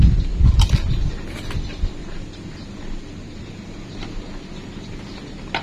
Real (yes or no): yes